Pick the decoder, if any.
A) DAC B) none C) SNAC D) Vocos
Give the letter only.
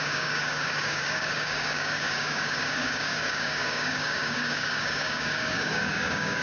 A